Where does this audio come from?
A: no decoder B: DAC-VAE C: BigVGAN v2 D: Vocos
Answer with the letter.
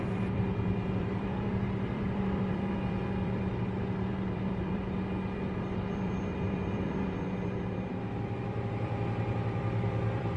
C